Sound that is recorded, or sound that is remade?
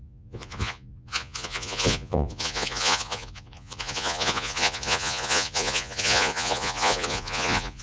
remade